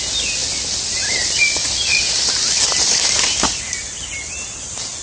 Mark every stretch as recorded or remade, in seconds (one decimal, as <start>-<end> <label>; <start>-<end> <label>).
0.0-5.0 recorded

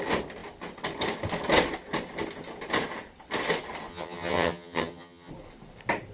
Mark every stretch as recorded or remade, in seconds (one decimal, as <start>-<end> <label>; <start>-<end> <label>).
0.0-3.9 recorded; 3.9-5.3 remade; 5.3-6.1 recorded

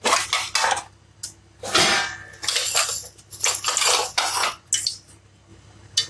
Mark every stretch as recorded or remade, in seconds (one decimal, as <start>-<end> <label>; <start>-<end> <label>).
0.0-4.0 recorded; 4.0-4.7 remade; 4.7-6.1 recorded

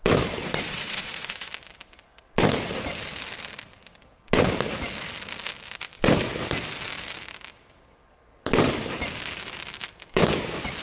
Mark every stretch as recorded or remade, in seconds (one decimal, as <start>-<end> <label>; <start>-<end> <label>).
0.0-0.4 recorded; 0.4-1.5 remade; 1.5-10.8 recorded